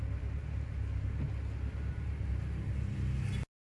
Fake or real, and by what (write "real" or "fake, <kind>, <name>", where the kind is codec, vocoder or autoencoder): real